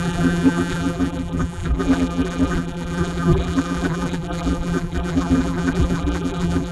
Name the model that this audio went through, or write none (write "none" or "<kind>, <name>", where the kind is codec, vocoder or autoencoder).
vocoder, BigVGAN v2